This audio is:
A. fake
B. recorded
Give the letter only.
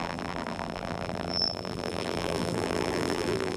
A